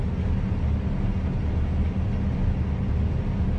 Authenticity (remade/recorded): recorded